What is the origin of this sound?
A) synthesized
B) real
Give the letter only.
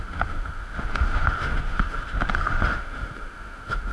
A